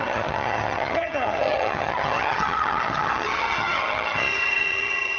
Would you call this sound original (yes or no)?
no